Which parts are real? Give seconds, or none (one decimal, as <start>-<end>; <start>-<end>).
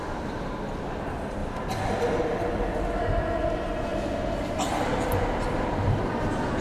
0.0-6.6